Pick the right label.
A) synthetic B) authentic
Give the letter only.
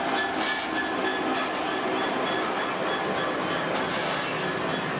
B